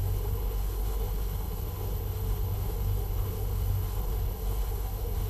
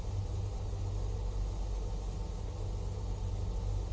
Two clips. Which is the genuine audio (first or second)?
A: second